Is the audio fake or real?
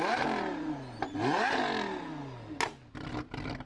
real